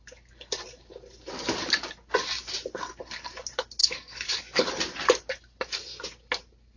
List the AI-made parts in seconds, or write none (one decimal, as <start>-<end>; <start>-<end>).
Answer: 3.8-4.7